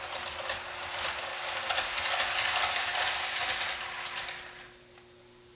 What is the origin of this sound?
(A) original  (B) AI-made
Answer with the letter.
A